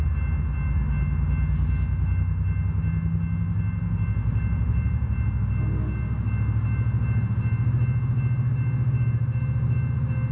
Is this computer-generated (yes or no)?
no